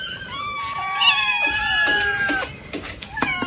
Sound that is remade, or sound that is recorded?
recorded